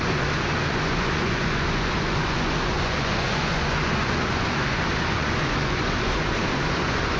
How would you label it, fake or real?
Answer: fake